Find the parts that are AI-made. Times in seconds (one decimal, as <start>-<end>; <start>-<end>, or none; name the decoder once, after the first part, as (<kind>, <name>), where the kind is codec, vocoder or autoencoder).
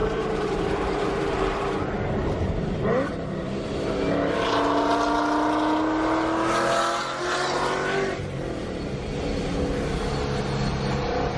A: 0.0-1.8 (vocoder, BigVGAN v2)